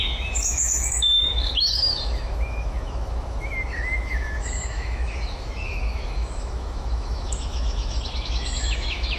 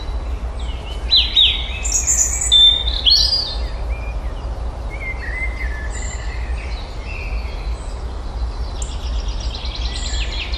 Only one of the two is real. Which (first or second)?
second